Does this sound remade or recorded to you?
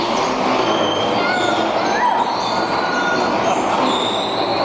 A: recorded